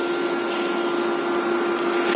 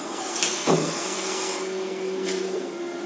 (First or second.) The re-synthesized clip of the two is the second